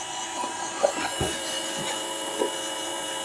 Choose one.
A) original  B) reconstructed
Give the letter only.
B